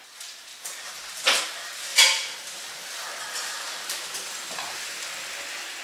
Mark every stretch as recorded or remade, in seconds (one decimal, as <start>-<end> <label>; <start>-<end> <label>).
0.0-0.5 recorded; 0.5-1.4 remade; 1.4-1.9 recorded; 1.9-3.2 remade; 3.2-5.8 recorded